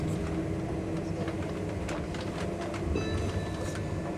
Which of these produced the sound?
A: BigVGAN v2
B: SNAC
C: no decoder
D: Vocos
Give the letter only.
C